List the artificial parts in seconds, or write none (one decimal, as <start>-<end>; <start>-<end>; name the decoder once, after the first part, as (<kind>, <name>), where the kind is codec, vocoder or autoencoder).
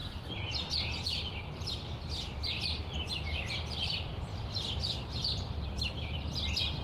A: none